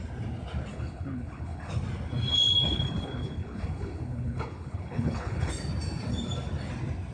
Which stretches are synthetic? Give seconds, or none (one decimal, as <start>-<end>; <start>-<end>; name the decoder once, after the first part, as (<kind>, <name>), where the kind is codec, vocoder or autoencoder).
0.7-1.7 (codec, HILCodec); 2.3-5.5